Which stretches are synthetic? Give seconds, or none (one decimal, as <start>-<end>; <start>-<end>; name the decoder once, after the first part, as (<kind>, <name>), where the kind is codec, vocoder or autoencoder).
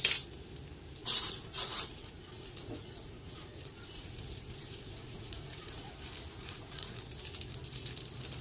1.0-5.9 (vocoder, Vocos); 6.4-7.1